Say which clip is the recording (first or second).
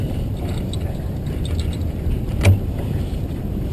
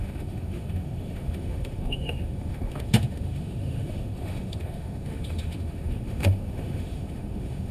first